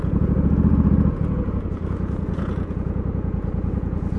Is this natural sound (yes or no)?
no